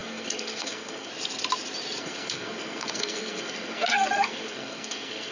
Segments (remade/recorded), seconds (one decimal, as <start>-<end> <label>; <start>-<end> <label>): 0.0-1.1 remade; 1.1-2.0 recorded; 2.0-5.3 remade